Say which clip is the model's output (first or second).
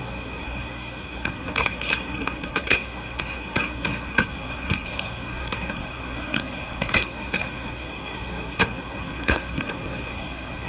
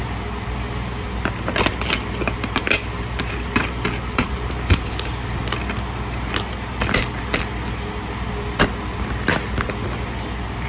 first